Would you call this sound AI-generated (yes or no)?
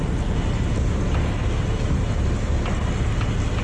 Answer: no